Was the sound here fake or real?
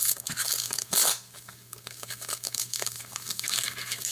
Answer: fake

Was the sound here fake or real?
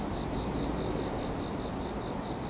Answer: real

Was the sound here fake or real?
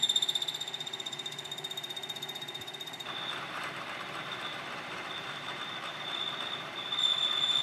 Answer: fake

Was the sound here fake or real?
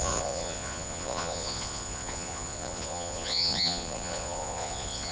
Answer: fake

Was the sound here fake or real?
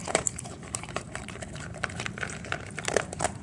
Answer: fake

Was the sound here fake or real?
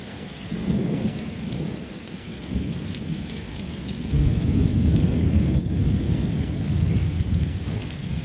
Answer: fake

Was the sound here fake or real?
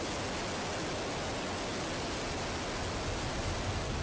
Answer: real